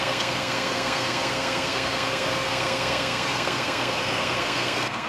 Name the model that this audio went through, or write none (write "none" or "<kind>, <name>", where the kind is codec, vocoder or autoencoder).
codec, SNAC